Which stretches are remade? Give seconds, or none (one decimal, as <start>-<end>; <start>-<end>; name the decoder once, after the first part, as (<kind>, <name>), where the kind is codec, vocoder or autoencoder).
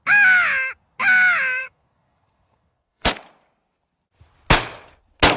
1.6-3.1 (codec, SNAC)